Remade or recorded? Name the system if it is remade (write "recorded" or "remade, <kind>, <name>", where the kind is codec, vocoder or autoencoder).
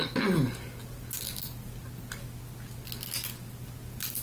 recorded